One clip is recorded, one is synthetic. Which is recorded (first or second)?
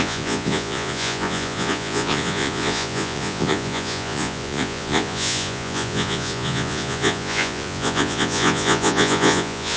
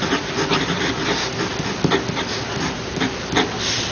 second